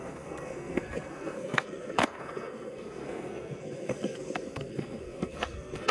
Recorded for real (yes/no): no